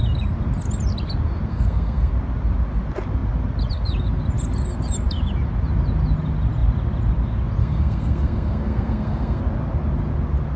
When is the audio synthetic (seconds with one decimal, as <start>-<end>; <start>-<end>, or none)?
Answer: 1.5-2.1; 7.6-9.4